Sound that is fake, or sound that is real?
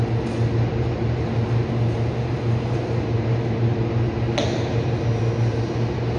real